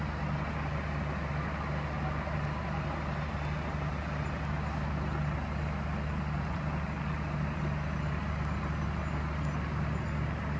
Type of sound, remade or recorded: recorded